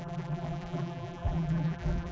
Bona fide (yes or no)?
no